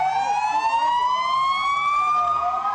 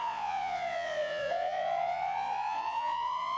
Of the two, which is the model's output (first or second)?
second